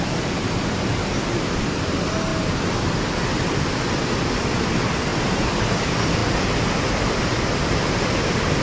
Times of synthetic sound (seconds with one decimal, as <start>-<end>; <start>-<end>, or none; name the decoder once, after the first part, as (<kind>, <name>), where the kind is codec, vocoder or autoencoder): 0.0-2.3 (vocoder, BigVGAN v2); 4.3-8.6